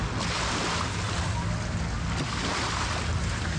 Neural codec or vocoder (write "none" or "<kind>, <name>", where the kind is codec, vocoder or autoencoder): none